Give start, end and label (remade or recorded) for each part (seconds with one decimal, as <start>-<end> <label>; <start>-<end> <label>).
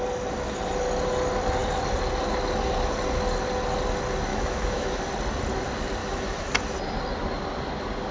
0.0-4.3 recorded; 4.3-5.0 remade; 5.0-6.0 recorded; 6.0-6.5 remade; 6.5-8.1 recorded